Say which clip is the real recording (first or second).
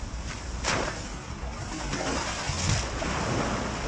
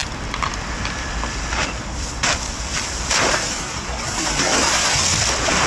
first